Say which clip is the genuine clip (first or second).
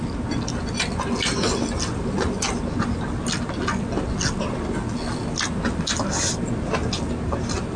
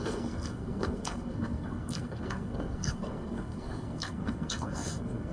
first